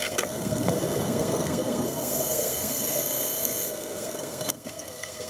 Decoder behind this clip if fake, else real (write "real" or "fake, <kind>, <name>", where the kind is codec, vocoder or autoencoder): fake, codec, SNAC